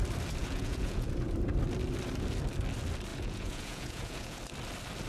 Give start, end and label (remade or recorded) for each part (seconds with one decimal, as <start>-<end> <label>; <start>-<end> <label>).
0.0-0.4 recorded; 0.4-1.1 remade; 1.1-3.1 recorded; 3.1-4.4 remade; 4.4-5.1 recorded